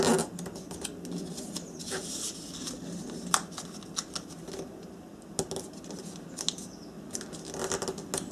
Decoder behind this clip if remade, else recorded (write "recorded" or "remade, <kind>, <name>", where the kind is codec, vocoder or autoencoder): recorded